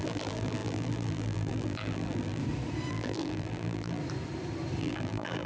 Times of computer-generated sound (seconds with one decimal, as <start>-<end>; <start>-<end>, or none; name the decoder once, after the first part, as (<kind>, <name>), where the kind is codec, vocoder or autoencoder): 0.0-2.4 (vocoder, BigVGAN v2); 2.9-4.0; 4.8-5.5